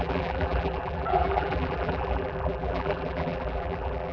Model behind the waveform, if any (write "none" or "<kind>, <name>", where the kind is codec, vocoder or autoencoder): vocoder, BigVGAN v2